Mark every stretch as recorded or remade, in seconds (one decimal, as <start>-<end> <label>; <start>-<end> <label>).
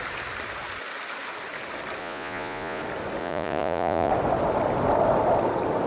0.0-2.0 recorded; 2.0-2.8 remade; 2.8-3.2 recorded; 3.2-4.1 remade; 4.1-5.9 recorded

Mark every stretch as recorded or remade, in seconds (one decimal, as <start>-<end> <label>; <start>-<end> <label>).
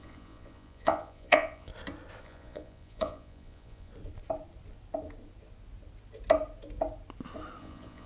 0.0-1.7 remade; 1.7-2.2 recorded; 2.2-3.9 remade; 3.9-7.6 recorded; 7.6-8.1 remade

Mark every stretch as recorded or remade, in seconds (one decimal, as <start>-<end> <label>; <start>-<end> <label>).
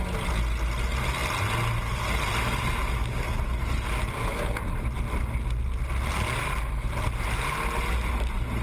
0.0-8.6 recorded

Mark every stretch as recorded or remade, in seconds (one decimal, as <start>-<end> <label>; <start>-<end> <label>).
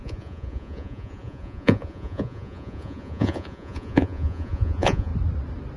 0.0-5.1 remade; 5.1-5.8 recorded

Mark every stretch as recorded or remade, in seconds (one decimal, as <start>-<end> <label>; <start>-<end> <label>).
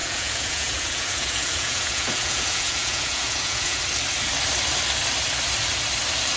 0.0-3.8 remade; 3.8-6.4 recorded